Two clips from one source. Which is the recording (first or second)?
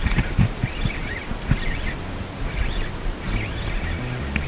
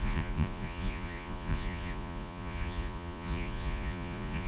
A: first